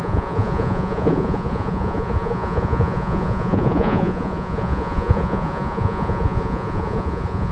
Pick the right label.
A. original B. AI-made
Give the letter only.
B